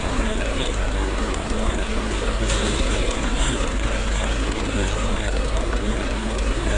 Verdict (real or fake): fake